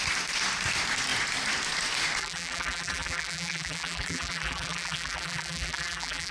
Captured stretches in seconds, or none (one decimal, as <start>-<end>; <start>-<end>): 0.0-2.2